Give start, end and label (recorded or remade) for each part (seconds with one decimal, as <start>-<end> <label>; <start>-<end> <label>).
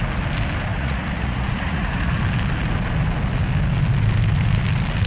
0.0-0.7 recorded; 0.7-2.2 remade; 2.2-5.1 recorded